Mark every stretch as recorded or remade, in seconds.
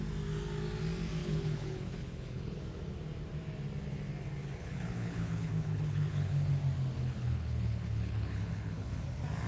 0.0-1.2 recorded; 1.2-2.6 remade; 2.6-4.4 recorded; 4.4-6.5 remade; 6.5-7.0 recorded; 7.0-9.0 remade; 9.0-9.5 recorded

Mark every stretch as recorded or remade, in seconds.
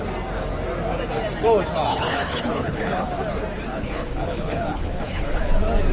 0.0-1.9 recorded; 1.9-3.1 remade; 3.1-3.7 recorded; 3.7-5.4 remade; 5.4-5.9 recorded